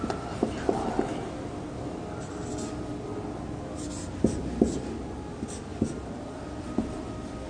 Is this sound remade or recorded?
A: recorded